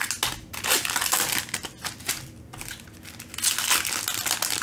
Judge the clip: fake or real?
real